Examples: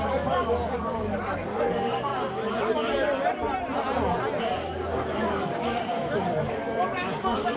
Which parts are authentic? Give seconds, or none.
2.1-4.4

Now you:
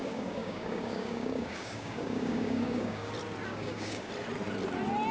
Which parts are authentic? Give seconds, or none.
3.1-3.5; 4.1-5.1

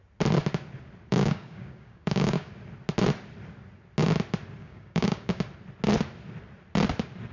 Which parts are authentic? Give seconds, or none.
0.0-1.1; 2.5-4.6; 5.4-7.3

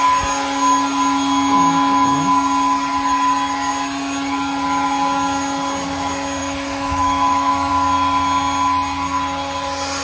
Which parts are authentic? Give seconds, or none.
0.0-6.4; 7.7-10.0

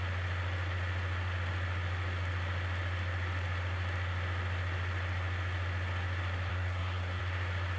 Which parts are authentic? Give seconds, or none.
0.0-6.5; 7.2-7.8

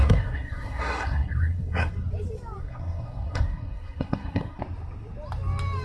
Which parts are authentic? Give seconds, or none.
1.9-2.6; 4.6-5.8